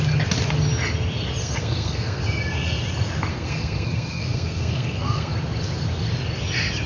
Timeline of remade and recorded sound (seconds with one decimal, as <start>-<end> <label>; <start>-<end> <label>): 0.0-1.4 recorded; 1.4-2.2 remade; 2.2-3.3 recorded; 3.3-5.3 remade; 5.3-6.9 recorded